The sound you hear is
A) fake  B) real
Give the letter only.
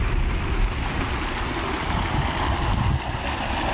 B